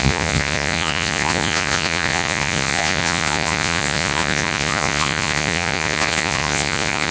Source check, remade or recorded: remade